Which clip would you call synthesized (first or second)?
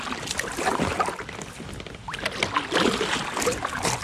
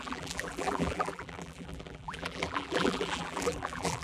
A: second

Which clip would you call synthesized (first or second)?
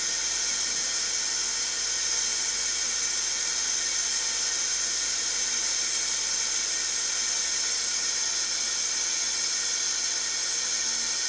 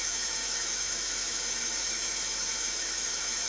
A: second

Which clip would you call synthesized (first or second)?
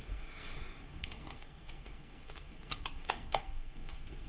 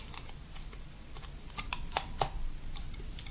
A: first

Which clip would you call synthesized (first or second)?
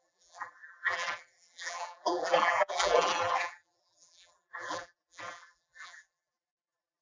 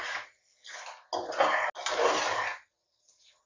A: first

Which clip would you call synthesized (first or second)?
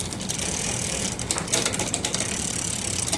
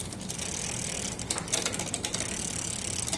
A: first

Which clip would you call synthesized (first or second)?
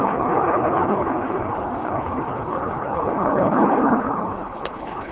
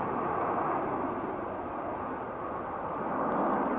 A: first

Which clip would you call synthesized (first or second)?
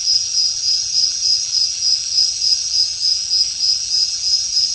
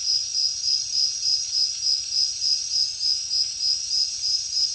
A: first